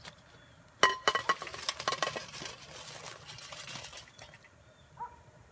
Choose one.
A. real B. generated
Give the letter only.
A